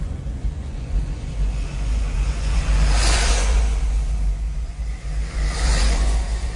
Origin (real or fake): fake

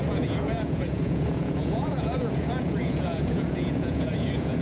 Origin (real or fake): fake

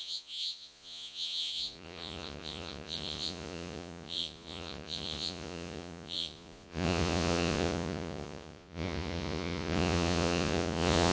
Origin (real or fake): fake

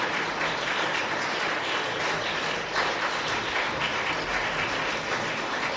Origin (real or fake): real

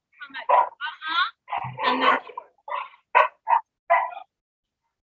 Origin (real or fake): real